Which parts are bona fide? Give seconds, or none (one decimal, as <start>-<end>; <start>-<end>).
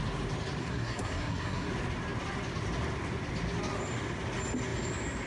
0.0-0.6; 1.7-5.3